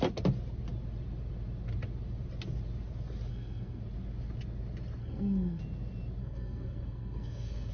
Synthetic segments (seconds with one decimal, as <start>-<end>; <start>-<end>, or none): 3.3-3.8; 5.0-5.6; 6.2-7.7